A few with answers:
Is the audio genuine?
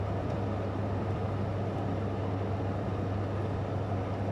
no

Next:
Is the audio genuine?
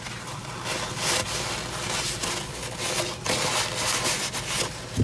yes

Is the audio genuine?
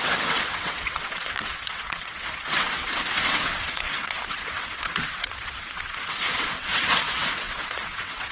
no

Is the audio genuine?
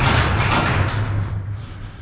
yes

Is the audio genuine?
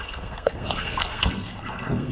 no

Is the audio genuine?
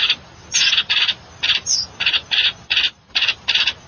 yes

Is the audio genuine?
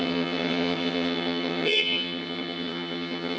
no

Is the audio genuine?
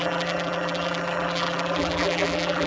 no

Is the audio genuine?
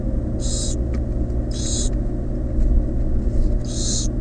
yes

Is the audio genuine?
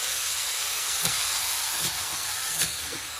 no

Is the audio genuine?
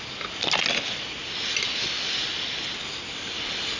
yes